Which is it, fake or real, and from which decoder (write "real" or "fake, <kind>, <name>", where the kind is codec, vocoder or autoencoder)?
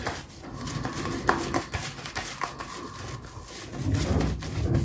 real